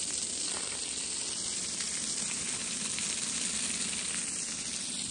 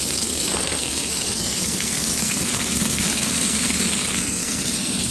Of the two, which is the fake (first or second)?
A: second